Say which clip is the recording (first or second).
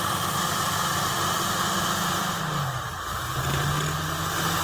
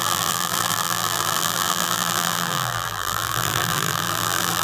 first